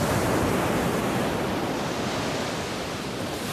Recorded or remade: recorded